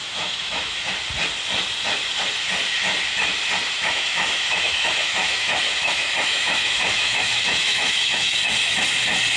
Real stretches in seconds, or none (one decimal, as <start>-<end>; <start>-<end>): 0.9-3.8; 8.4-9.4